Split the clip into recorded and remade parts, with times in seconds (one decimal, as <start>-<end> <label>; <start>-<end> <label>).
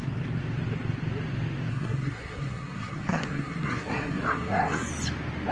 0.0-1.7 recorded; 1.7-4.9 remade; 4.9-5.5 recorded